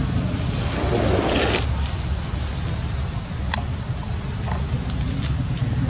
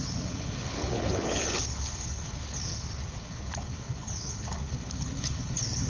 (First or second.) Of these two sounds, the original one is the first